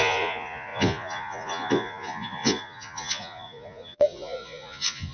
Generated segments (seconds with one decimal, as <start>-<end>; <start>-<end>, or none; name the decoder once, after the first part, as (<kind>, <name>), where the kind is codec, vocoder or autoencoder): 0.0-5.1 (vocoder, Vocos)